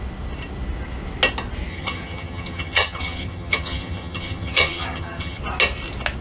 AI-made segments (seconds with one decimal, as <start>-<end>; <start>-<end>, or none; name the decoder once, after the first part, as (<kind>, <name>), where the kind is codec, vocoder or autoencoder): 1.7-5.4 (vocoder, HiFi-GAN)